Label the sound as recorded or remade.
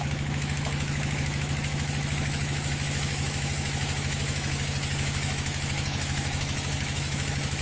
remade